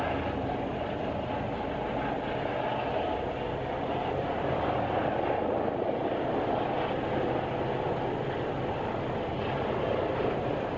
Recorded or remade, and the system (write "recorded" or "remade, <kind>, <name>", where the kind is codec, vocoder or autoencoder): recorded